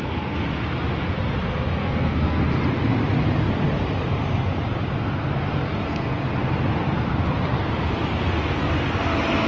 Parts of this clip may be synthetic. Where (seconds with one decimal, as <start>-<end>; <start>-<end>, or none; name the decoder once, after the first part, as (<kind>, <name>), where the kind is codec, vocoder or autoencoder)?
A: 1.8-2.4 (codec, SNAC)

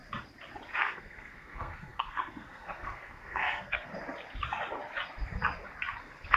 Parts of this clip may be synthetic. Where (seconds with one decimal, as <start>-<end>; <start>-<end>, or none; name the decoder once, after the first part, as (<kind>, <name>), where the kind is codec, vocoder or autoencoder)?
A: 0.8-3.9 (codec, SNAC); 6.0-6.4

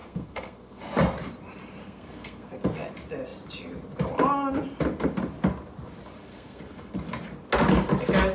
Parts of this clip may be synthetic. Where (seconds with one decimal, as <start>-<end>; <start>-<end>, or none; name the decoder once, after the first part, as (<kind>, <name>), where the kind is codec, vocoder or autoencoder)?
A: 0.0-0.8 (codec, SNAC); 1.8-2.6; 6.3-6.9

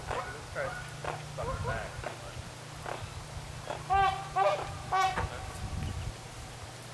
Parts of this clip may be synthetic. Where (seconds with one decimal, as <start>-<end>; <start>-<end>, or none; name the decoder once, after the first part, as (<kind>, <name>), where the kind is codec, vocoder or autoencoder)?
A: none

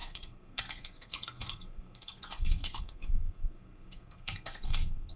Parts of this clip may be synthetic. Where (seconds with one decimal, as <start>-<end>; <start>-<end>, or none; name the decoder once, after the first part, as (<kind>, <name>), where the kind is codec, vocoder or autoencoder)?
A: 0.0-5.2 (codec, SNAC)

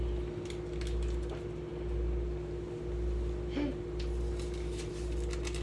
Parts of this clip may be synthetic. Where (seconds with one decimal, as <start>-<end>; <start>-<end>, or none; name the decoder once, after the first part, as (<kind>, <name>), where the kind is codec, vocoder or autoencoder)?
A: none

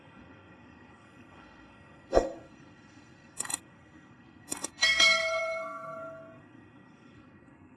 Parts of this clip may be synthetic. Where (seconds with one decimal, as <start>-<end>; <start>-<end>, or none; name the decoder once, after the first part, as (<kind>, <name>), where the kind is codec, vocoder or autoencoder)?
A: 0.0-7.8 (codec, SNAC)